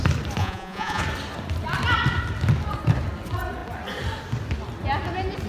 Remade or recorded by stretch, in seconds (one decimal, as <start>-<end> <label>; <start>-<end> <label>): 0.0-0.4 recorded; 0.4-1.0 remade; 1.0-5.5 recorded

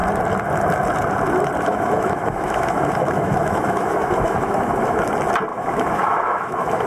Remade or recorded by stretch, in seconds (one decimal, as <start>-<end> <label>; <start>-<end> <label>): 0.0-1.7 recorded; 1.7-5.0 remade; 5.0-5.5 recorded; 5.5-6.9 remade

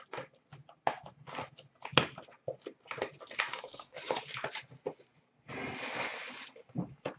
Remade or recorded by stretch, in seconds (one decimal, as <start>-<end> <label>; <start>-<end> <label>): 0.0-3.5 recorded; 3.5-4.2 remade; 4.2-7.2 recorded

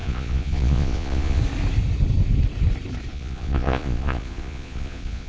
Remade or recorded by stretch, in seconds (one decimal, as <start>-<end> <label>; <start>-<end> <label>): 0.0-1.4 remade; 1.4-3.1 recorded; 3.1-5.3 remade

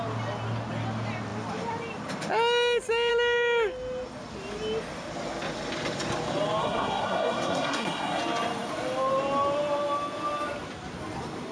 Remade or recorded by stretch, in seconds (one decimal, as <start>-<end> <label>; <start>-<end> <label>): 0.0-6.6 recorded; 6.6-8.2 remade; 8.2-11.5 recorded

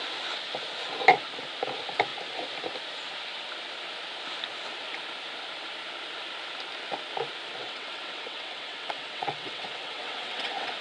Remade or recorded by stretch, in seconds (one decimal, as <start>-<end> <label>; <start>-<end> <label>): 0.0-7.6 recorded; 7.6-10.8 remade